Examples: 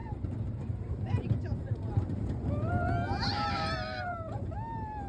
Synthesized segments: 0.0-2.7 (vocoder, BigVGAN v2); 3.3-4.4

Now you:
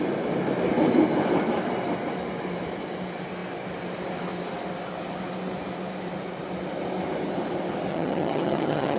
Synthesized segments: 7.9-9.0 (vocoder, HiFi-GAN)